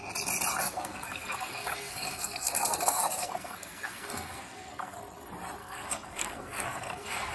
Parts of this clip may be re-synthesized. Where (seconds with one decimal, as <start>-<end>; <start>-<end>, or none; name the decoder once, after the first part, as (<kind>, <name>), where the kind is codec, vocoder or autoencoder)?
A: 0.6-5.0 (codec, SNAC); 5.6-7.3